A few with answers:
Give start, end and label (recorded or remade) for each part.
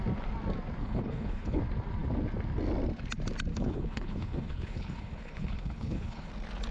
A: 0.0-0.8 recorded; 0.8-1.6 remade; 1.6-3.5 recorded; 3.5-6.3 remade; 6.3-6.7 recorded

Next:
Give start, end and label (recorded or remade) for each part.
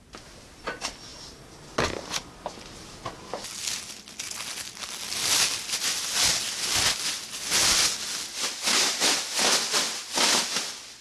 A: 0.0-11.0 recorded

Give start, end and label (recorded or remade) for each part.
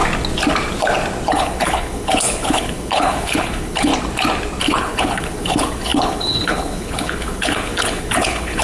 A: 0.0-1.3 recorded; 1.3-3.9 remade; 3.9-4.6 recorded; 4.6-8.6 remade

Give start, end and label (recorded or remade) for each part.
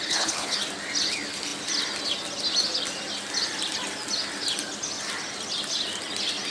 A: 0.0-0.6 remade; 0.6-6.5 recorded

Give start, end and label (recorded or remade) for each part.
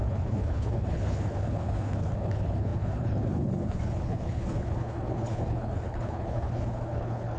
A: 0.0-7.4 remade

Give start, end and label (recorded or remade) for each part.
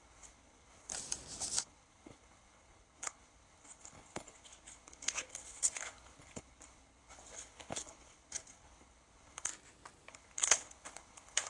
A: 0.0-0.9 remade; 0.9-1.6 recorded; 1.6-9.5 remade; 9.5-10.1 recorded; 10.1-11.5 remade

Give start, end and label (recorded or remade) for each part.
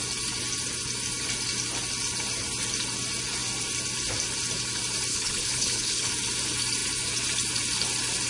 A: 0.0-5.1 recorded; 5.1-6.1 remade; 6.1-8.3 recorded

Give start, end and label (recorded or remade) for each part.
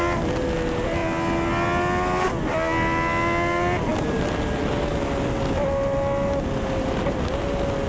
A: 0.0-7.9 recorded